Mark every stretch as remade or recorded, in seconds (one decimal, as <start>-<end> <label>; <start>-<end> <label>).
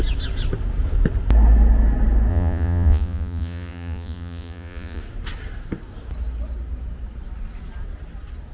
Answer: 0.0-2.3 recorded; 2.3-5.0 remade; 5.0-8.5 recorded